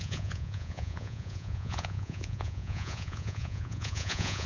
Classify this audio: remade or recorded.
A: remade